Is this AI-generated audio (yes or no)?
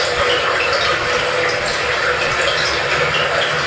no